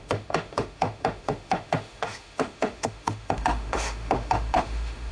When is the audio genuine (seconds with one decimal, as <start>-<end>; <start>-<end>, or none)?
none